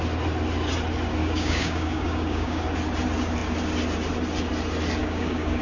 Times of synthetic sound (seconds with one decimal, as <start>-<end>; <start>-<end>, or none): 1.2-2.6; 5.0-5.6